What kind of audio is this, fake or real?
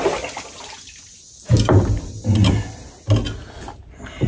real